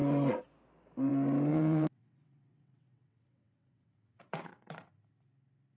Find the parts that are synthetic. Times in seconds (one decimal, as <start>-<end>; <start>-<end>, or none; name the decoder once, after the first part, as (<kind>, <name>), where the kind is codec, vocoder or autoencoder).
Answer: 1.5-4.9 (vocoder, WaveNeXt)